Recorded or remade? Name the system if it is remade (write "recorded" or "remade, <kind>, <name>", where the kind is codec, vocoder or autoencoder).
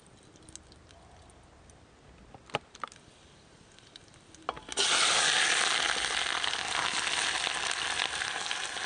recorded